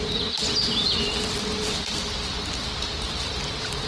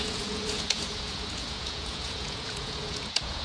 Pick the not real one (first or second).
second